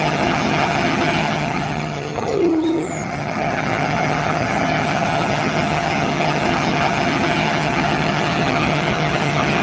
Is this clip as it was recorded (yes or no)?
no